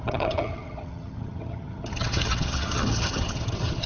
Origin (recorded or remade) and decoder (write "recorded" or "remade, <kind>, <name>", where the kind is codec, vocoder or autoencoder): remade, vocoder, HiFi-GAN